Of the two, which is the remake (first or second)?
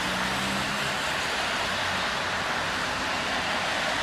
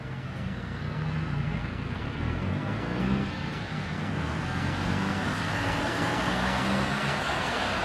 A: second